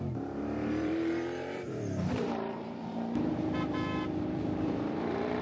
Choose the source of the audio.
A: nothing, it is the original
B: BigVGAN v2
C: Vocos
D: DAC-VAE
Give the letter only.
B